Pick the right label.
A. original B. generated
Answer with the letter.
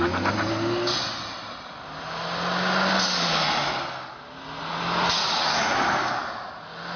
A